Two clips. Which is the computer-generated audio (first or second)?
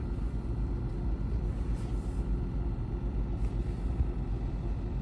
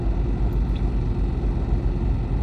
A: first